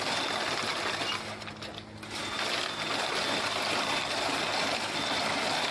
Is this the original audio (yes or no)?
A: yes